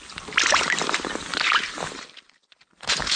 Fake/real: real